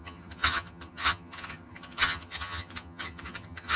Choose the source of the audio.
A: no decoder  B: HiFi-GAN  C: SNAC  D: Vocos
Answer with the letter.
B